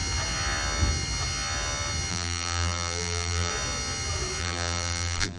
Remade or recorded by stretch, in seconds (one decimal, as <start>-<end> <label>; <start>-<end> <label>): 0.0-2.1 recorded; 2.1-3.5 remade; 3.5-4.4 recorded; 4.4-5.4 remade